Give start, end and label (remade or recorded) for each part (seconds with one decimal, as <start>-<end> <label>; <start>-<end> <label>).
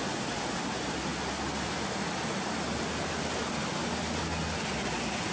0.0-5.3 recorded